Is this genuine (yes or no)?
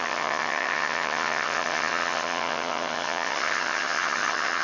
no